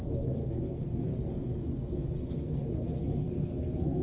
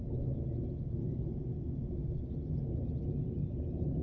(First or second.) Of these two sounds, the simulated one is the first